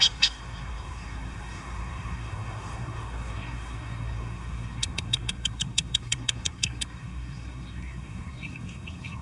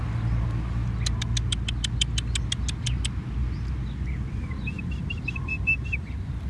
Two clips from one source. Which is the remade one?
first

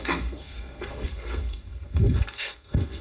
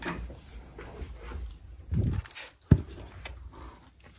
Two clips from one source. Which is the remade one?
first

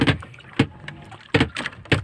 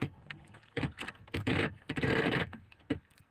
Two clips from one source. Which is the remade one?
second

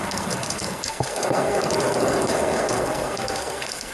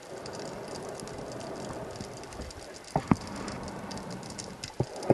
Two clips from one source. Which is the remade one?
first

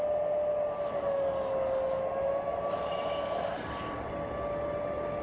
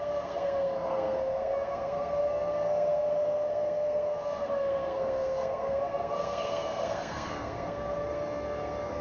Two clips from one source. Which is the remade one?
second